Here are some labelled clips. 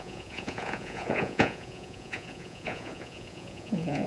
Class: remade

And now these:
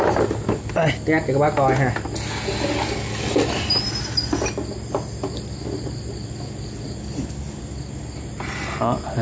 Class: recorded